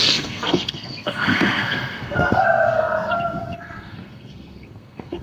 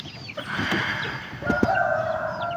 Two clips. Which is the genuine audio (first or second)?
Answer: second